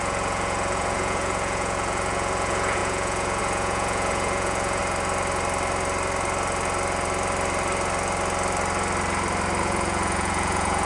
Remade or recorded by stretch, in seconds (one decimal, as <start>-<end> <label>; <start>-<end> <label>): 0.0-4.8 remade; 4.8-9.6 recorded; 9.6-10.9 remade